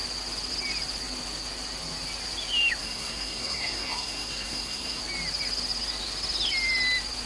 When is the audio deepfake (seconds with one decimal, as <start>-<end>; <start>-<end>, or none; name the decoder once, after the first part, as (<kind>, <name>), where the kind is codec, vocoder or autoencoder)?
2.8-5.0 (codec, SNAC)